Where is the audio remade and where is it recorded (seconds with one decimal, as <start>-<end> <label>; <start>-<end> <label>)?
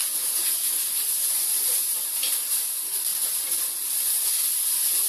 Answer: 0.0-3.1 remade; 3.1-4.5 recorded; 4.5-5.1 remade